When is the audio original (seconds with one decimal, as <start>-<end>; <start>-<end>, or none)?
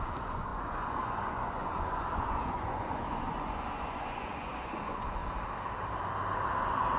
5.2-6.6